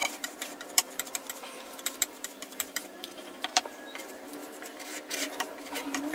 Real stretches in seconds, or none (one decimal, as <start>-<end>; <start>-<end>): 4.4-5.1